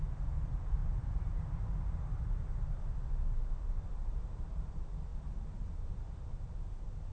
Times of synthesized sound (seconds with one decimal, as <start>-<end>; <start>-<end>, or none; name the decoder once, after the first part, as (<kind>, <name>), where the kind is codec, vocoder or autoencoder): 0.0-0.8 (vocoder, BigVGAN v2); 3.6-5.1; 5.6-7.1

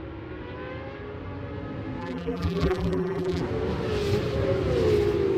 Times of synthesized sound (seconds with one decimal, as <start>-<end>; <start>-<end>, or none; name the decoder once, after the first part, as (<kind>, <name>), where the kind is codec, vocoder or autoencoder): 2.0-3.4 (vocoder, BigVGAN v2)

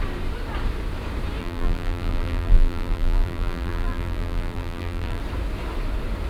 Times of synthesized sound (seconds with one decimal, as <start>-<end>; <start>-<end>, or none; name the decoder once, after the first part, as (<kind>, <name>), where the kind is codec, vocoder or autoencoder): 1.4-5.2 (vocoder, BigVGAN v2)

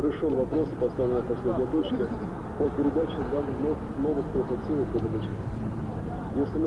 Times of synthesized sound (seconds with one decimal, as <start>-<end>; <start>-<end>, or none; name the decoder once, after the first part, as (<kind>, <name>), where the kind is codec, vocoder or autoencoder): 1.8-3.6 (vocoder, BigVGAN v2); 5.3-6.3

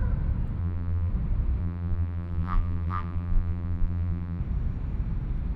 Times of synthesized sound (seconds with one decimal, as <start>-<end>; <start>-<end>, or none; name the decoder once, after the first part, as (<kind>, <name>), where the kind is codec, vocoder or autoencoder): 0.6-1.1 (vocoder, BigVGAN v2); 1.6-4.4

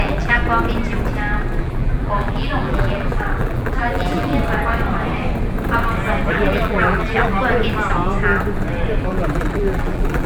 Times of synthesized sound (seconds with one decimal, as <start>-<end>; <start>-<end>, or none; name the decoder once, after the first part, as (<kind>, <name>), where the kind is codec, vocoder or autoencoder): 0.0-0.4 (vocoder, BigVGAN v2); 1.6-4.3; 6.3-7.3; 9.0-10.3